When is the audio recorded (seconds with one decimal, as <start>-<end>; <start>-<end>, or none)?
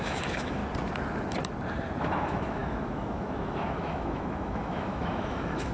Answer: 0.6-2.0